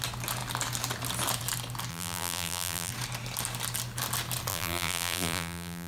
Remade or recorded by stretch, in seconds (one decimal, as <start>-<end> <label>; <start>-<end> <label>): 0.0-1.9 recorded; 1.9-2.9 remade; 2.9-4.5 recorded; 4.5-5.9 remade